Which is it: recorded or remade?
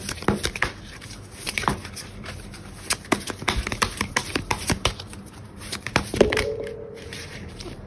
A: remade